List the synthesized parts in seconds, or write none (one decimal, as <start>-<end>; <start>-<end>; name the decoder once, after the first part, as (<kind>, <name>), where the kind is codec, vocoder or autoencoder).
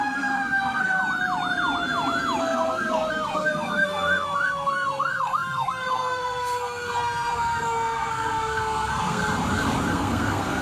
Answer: 0.0-1.0 (codec, SNAC); 2.4-9.2; 9.9-10.6